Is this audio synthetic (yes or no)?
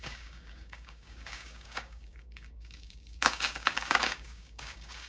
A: yes